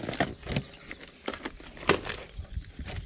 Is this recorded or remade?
recorded